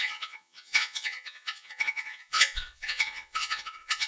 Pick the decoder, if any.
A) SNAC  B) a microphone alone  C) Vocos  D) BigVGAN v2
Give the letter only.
C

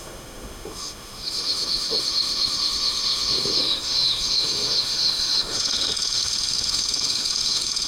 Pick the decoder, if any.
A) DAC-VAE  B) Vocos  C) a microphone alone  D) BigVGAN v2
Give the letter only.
A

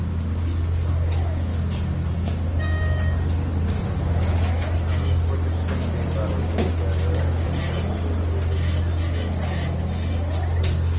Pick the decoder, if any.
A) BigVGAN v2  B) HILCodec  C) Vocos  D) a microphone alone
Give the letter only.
D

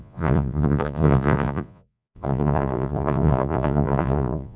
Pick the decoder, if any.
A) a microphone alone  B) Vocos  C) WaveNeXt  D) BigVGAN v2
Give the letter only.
B